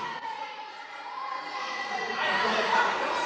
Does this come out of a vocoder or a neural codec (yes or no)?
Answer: yes